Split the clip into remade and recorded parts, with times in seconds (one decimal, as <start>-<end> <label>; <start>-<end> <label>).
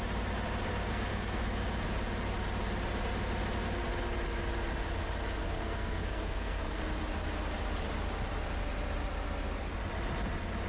0.0-0.9 recorded; 0.9-1.4 remade; 1.4-5.4 recorded; 5.4-6.8 remade; 6.8-10.7 recorded